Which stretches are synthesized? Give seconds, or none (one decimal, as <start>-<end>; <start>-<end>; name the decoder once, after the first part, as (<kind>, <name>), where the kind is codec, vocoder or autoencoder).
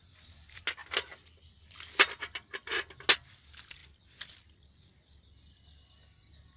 0.8-1.5 (vocoder, BigVGAN v2)